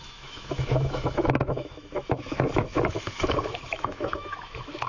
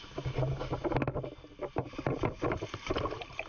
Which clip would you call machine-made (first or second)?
first